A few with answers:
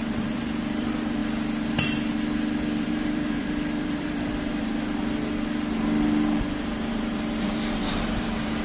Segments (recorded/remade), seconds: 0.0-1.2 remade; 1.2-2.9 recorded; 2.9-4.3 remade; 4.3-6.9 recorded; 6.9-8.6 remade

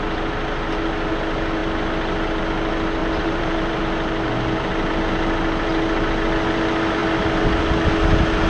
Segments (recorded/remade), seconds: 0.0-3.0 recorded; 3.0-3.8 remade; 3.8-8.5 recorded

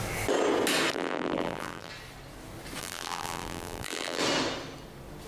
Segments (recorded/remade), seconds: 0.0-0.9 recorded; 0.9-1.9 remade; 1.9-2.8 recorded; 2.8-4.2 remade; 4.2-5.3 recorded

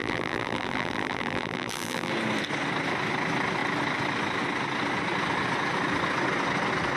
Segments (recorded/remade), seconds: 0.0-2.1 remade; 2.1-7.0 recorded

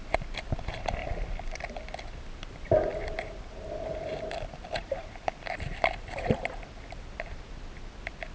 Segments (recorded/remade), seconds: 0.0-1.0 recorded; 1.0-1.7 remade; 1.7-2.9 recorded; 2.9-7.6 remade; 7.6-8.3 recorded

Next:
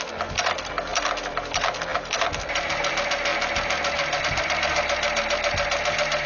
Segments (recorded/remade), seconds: 0.0-0.9 recorded; 0.9-1.4 remade; 1.4-6.3 recorded

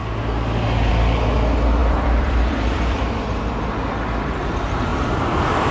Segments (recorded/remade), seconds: 0.0-1.8 recorded; 1.8-3.2 remade; 3.2-4.9 recorded; 4.9-5.7 remade

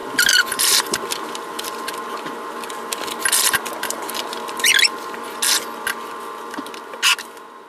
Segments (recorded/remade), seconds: 0.0-4.3 remade; 4.3-7.7 recorded